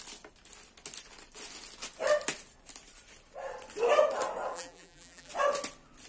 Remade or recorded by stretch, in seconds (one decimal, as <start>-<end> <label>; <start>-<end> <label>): 0.0-4.5 recorded; 4.5-5.3 remade; 5.3-6.1 recorded